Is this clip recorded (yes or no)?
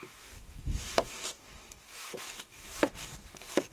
no